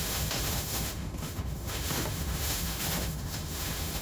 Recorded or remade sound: remade